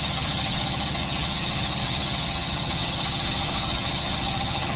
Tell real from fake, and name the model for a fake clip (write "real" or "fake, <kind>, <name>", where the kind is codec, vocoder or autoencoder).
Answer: fake, vocoder, HiFi-GAN